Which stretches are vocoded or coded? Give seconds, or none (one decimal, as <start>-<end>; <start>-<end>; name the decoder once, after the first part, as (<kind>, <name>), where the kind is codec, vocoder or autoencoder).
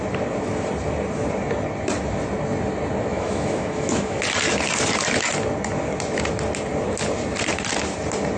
3.1-4.2 (autoencoder, DAC-VAE)